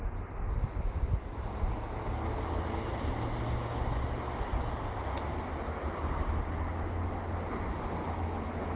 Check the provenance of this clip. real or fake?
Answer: real